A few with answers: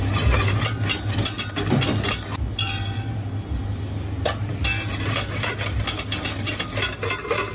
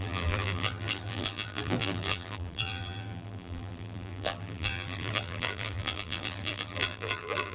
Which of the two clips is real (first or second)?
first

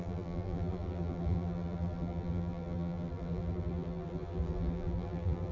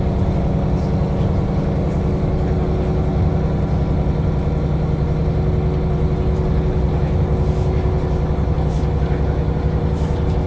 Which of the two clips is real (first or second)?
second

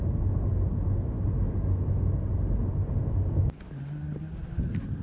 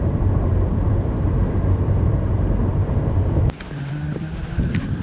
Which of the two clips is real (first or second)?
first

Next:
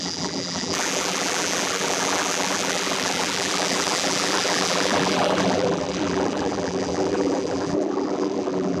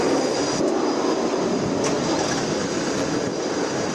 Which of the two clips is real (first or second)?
second